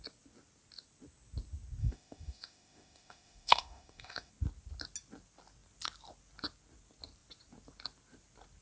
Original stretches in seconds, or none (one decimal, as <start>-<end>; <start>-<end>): 0.0-1.8; 4.3-8.6